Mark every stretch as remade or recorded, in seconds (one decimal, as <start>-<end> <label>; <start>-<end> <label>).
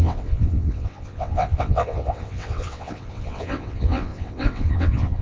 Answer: 0.0-5.2 remade